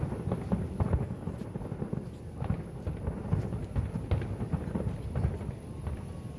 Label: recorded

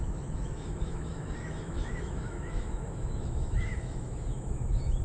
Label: remade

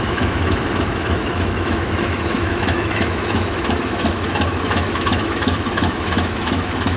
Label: remade